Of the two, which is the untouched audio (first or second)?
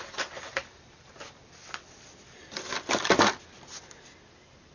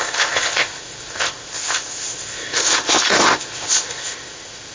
first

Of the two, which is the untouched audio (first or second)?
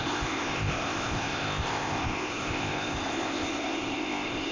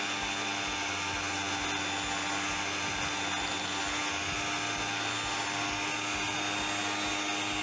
second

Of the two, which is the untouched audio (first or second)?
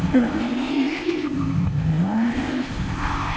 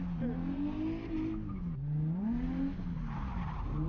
second